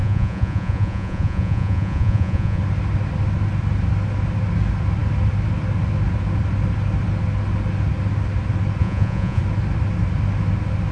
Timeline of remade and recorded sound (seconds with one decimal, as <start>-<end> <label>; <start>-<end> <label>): 0.0-2.6 remade; 2.6-8.8 recorded; 8.8-9.4 remade; 9.4-10.9 recorded